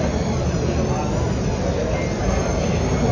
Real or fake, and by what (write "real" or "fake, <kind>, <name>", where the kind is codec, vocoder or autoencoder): real